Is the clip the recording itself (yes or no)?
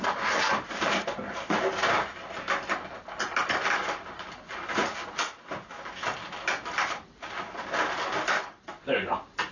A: yes